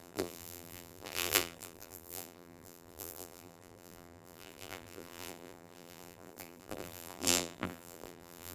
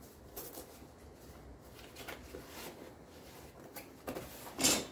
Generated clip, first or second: first